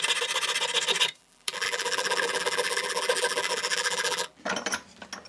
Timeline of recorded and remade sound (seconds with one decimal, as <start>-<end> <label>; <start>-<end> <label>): 0.0-1.2 recorded; 1.2-4.4 remade; 4.4-5.3 recorded